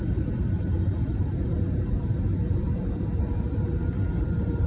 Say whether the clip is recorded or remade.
remade